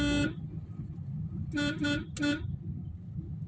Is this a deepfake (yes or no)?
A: no